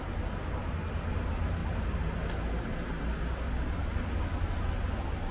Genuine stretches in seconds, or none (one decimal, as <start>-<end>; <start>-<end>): 0.0-5.3